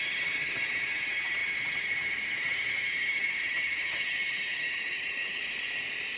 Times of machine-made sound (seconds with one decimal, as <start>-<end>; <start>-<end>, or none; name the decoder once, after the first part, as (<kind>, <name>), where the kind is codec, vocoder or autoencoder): 0.0-5.4 (vocoder, HiFi-GAN)